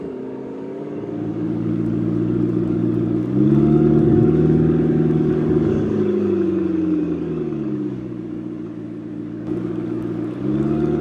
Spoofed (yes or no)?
yes